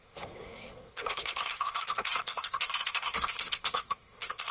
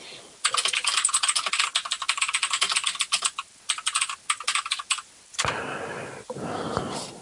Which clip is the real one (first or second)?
second